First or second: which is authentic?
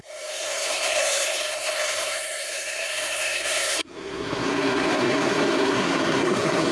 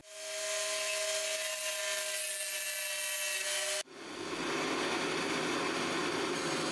second